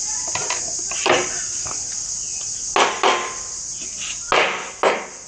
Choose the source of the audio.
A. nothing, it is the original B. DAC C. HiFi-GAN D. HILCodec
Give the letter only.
A